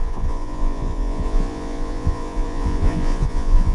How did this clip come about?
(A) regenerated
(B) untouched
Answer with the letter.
A